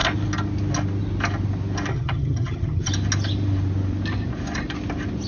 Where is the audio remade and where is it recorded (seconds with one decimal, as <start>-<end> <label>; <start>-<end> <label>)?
0.0-1.9 recorded; 1.9-2.9 remade; 2.9-5.3 recorded